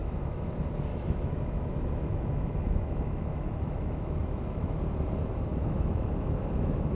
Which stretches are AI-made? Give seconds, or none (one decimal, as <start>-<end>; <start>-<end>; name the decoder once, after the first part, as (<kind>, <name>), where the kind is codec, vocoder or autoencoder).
0.0-0.5 (autoencoder, DAC-VAE); 0.9-4.8; 5.5-6.9